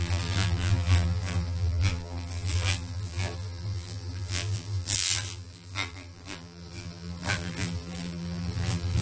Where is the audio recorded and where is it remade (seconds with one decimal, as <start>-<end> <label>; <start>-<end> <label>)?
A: 0.0-9.0 remade